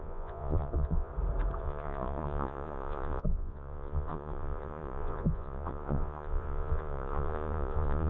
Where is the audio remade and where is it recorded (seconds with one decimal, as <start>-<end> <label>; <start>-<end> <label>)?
0.0-1.1 remade; 1.1-1.6 recorded; 1.6-8.1 remade